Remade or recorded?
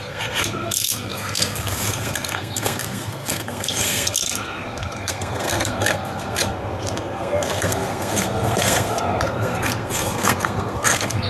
remade